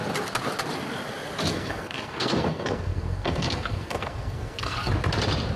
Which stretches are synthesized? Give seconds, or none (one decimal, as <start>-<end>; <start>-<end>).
1.5-4.9

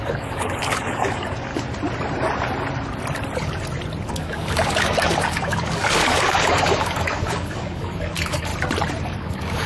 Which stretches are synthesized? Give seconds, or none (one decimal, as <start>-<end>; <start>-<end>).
0.0-1.5; 4.1-8.5; 9.0-9.7

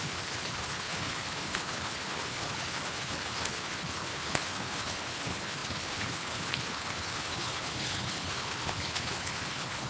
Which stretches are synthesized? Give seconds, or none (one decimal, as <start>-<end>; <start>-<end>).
0.0-9.9

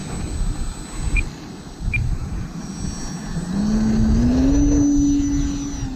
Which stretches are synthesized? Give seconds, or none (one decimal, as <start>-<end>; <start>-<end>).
none